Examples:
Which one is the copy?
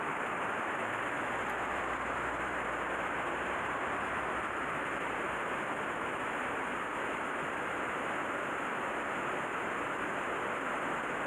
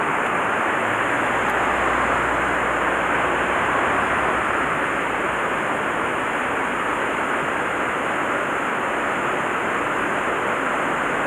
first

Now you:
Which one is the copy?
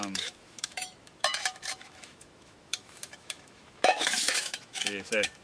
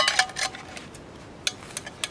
first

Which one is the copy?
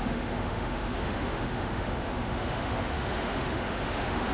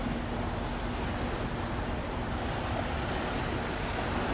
first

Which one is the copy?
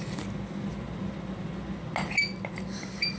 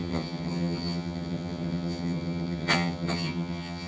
second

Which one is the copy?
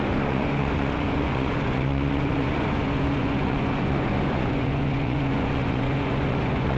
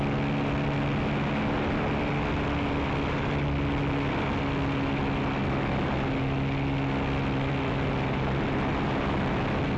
first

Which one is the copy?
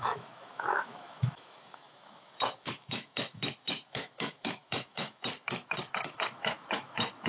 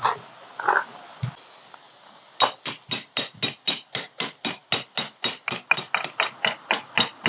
first